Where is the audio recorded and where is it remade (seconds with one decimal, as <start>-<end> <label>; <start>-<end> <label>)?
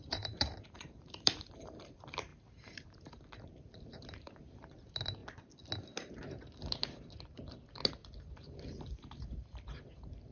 0.0-5.2 remade; 5.2-6.2 recorded; 6.2-10.3 remade